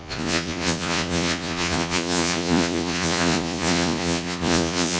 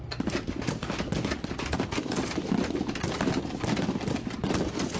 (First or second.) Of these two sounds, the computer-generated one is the first